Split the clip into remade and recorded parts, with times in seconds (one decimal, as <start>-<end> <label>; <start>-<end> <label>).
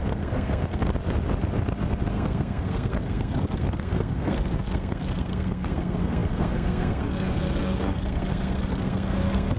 0.0-0.8 remade; 0.8-2.1 recorded; 2.1-9.6 remade